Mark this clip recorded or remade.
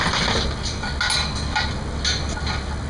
recorded